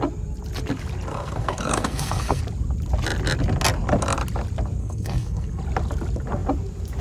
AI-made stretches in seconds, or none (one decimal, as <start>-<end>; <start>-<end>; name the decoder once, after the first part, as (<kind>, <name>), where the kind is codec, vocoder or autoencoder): 1.1-2.4 (codec, SNAC); 4.8-5.6